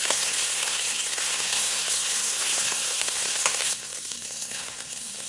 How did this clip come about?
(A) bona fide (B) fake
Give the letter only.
B